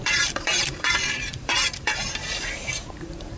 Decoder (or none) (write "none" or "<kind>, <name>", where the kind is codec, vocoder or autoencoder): vocoder, BigVGAN v2